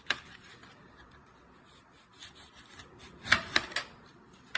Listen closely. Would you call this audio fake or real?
real